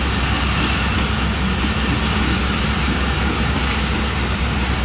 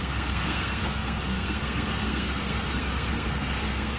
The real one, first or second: first